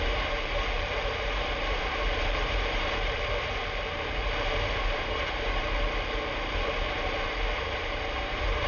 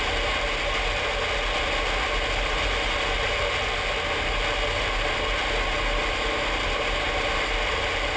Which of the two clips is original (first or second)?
second